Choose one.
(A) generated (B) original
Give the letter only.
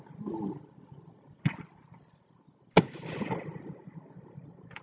B